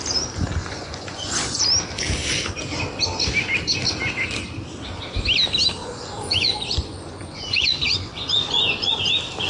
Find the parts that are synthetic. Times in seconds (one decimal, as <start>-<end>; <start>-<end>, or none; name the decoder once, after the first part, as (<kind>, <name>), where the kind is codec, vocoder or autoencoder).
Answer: 0.6-1.6 (vocoder, Vocos); 5.8-9.0